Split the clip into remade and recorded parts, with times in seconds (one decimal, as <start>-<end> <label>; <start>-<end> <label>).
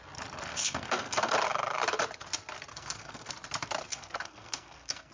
0.0-0.5 recorded; 0.5-1.3 remade; 1.3-2.7 recorded; 2.7-3.3 remade; 3.3-3.8 recorded; 3.8-5.1 remade